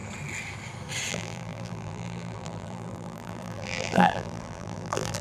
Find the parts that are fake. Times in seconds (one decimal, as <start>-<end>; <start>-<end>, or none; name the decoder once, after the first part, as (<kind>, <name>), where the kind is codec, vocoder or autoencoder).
1.1-5.2 (vocoder, BigVGAN v2)